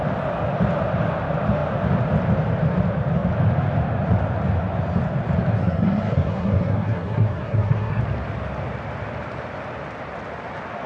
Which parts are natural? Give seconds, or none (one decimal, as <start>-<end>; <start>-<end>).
0.0-5.6; 8.0-10.9